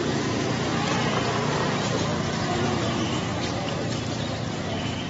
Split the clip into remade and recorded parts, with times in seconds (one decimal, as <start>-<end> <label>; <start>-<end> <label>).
0.0-0.7 remade; 0.7-1.7 recorded; 1.7-2.1 remade; 2.1-3.7 recorded; 3.7-5.1 remade